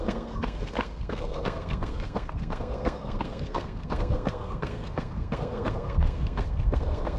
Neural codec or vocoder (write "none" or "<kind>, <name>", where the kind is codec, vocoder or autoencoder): codec, SNAC